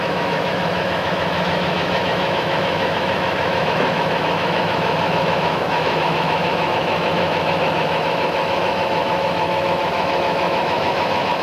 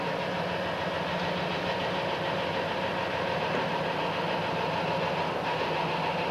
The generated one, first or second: first